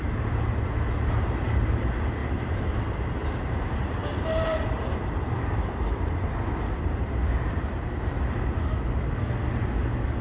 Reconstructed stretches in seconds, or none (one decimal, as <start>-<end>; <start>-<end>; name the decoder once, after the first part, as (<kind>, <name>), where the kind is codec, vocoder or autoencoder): 2.2-2.7 (vocoder, BigVGAN v2); 3.2-8.4